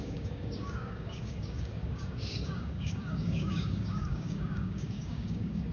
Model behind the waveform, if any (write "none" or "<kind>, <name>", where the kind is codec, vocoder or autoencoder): codec, DAC